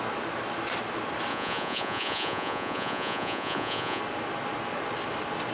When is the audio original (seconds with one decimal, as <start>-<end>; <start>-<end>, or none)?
0.0-1.3; 4.0-5.5